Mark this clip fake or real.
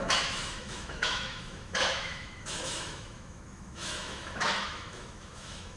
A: fake